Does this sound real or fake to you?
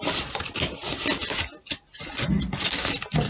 real